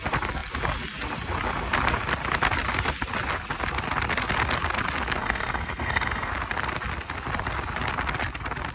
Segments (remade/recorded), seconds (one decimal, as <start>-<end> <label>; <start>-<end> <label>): 0.0-5.2 recorded; 5.2-6.3 remade; 6.3-8.7 recorded

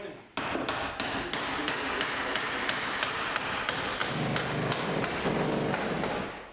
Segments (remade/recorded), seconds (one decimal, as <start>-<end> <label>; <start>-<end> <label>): 0.0-6.5 recorded

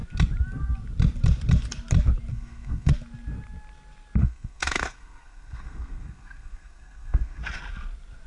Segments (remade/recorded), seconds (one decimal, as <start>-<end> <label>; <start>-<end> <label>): 0.0-2.3 recorded; 2.3-2.9 remade; 2.9-4.2 recorded; 4.2-7.4 remade; 7.4-8.3 recorded

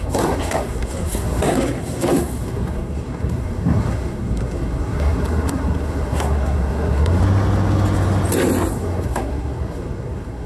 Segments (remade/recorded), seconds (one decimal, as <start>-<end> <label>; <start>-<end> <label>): 0.0-7.2 remade; 7.2-8.7 recorded; 8.7-10.5 remade

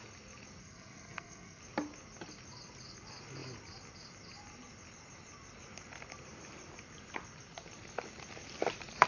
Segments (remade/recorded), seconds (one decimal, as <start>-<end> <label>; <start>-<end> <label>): 0.0-0.6 recorded; 0.6-1.6 remade; 1.6-9.1 recorded

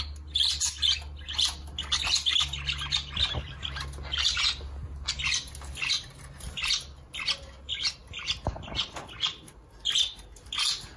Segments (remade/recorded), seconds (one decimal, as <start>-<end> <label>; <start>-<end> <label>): 0.0-11.0 recorded

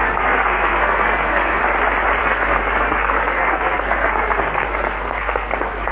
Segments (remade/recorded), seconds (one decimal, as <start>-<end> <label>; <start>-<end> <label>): 0.0-1.6 remade; 1.6-2.2 recorded; 2.2-5.9 remade